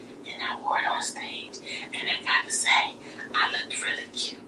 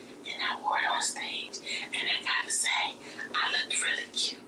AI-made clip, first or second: first